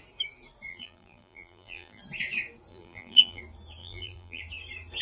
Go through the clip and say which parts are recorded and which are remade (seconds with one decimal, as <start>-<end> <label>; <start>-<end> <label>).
0.0-0.7 recorded; 0.7-2.0 remade; 2.0-2.7 recorded; 2.7-3.4 remade; 3.4-3.8 recorded; 3.8-4.4 remade; 4.4-5.0 recorded